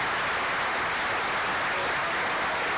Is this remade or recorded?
recorded